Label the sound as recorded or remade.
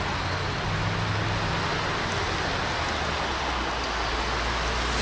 recorded